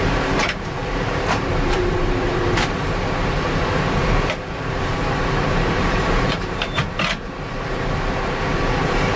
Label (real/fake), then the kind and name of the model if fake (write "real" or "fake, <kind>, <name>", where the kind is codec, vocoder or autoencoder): fake, vocoder, BigVGAN v2